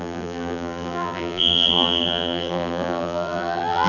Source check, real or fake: fake